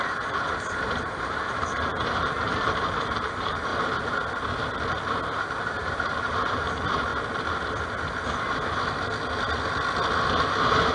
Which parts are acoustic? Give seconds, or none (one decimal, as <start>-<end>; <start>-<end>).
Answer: 3.7-5.6; 7.1-10.9